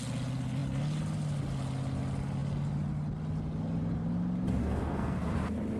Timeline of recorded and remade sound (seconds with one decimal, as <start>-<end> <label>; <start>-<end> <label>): 0.0-4.6 recorded; 4.6-5.3 remade; 5.3-5.8 recorded